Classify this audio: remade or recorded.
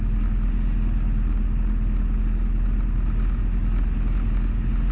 recorded